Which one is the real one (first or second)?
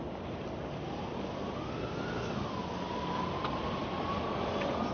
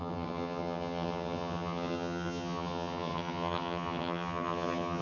first